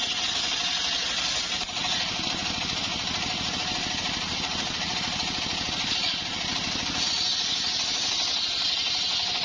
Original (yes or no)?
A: yes